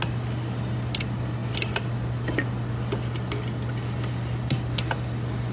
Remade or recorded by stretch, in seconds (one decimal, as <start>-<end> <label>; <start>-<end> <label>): 0.0-5.5 recorded